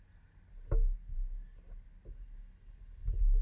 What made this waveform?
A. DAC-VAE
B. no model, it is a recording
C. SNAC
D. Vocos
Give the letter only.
B